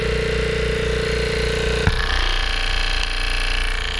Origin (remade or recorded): recorded